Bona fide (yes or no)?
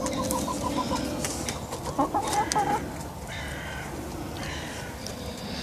yes